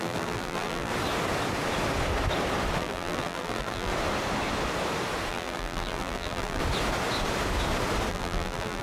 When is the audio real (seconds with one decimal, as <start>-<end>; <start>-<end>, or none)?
0.9-2.8; 3.9-5.3; 6.6-8.1